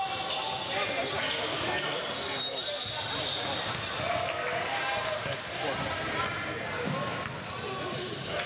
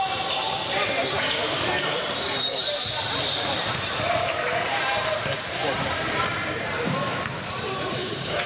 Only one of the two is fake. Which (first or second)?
second